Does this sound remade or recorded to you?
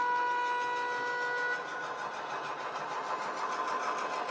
recorded